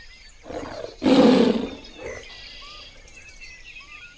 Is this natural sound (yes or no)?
yes